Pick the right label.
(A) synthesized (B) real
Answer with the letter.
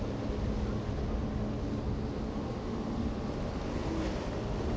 B